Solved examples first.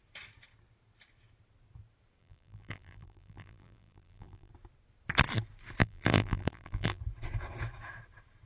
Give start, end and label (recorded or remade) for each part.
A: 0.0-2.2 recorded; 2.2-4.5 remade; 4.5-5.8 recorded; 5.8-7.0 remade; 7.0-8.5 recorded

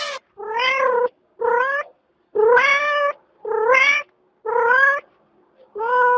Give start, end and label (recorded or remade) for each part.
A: 0.0-6.2 recorded

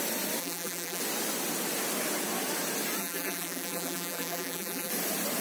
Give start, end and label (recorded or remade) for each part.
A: 0.0-0.4 recorded; 0.4-1.0 remade; 1.0-3.0 recorded; 3.0-4.9 remade; 4.9-5.4 recorded

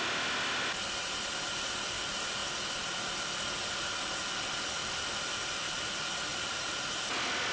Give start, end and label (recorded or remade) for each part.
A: 0.0-6.3 recorded; 6.3-7.1 remade; 7.1-7.5 recorded

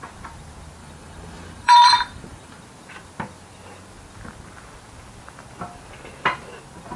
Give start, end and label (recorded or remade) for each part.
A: 0.0-0.8 recorded; 0.8-2.6 remade; 2.6-7.0 recorded

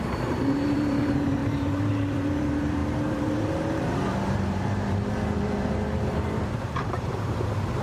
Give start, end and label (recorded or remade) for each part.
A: 0.0-7.8 remade